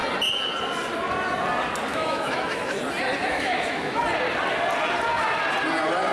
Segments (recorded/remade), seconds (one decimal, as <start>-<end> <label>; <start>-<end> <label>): 0.0-1.9 recorded; 1.9-2.8 remade; 2.8-3.2 recorded; 3.2-4.0 remade; 4.0-6.1 recorded